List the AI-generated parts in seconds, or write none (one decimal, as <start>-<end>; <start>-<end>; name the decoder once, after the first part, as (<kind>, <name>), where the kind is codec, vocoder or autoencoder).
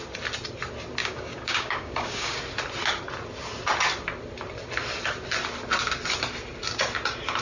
1.0-2.4 (codec, DAC)